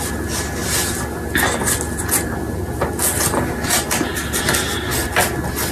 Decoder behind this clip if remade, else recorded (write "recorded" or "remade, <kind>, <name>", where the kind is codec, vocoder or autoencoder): recorded